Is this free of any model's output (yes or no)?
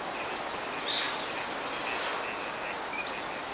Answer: yes